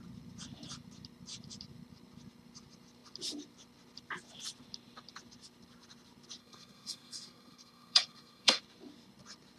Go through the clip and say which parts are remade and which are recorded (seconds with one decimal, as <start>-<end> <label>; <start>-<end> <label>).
0.0-6.4 recorded; 6.4-8.6 remade; 8.6-9.6 recorded